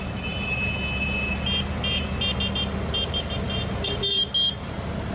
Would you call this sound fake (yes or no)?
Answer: no